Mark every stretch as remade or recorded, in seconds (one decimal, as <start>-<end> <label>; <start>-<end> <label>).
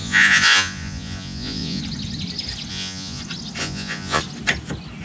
0.0-1.8 remade; 1.8-2.7 recorded; 2.7-3.2 remade; 3.2-3.6 recorded; 3.6-4.2 remade; 4.2-5.0 recorded